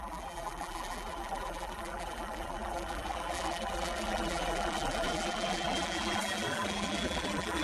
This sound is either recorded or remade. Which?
remade